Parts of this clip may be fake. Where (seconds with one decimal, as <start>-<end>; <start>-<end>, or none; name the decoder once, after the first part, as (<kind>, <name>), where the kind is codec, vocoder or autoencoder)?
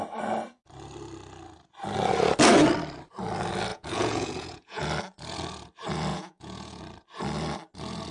3.7-4.9 (vocoder, Vocos); 6.1-6.8